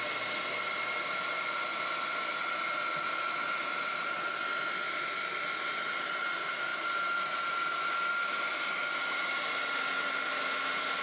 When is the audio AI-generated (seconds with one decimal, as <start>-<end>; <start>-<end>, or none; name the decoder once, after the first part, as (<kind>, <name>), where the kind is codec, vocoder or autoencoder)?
none